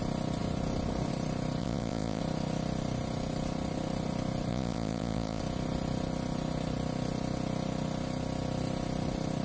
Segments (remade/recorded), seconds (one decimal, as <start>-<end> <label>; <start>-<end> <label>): 0.0-1.6 recorded; 1.6-2.2 remade; 2.2-4.5 recorded; 4.5-5.4 remade; 5.4-9.4 recorded